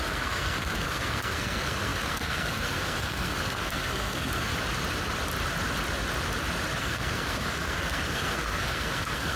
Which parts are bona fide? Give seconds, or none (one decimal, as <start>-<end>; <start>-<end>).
4.5-6.8

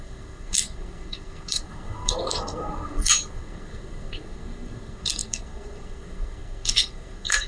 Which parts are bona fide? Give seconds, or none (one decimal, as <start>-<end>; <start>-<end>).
none

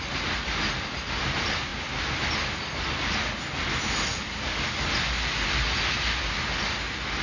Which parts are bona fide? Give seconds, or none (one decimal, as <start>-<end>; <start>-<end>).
0.0-7.2